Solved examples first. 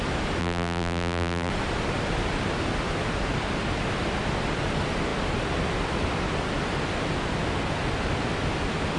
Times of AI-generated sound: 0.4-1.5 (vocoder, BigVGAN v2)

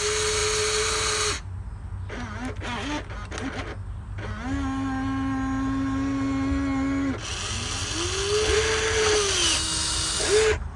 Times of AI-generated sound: none

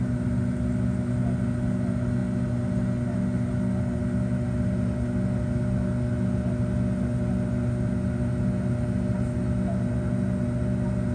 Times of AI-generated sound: none

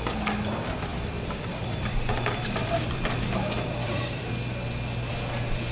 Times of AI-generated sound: 0.9-4.3 (vocoder, BigVGAN v2)

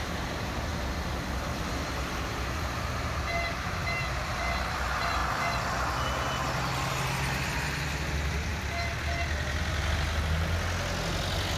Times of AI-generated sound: none

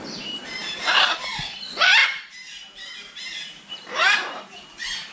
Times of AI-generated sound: 0.0-5.1 (vocoder, BigVGAN v2)

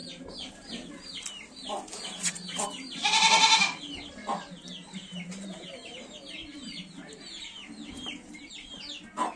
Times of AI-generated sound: 0.0-0.7 (vocoder, BigVGAN v2); 6.4-8.5